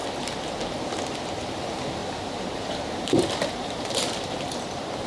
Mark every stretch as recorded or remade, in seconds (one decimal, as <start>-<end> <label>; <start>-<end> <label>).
0.0-1.4 recorded; 1.4-2.0 remade; 2.0-2.7 recorded; 2.7-5.1 remade